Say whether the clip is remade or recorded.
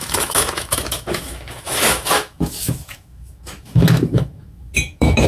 remade